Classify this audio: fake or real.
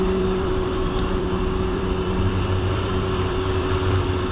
fake